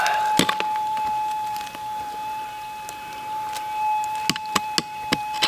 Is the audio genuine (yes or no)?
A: yes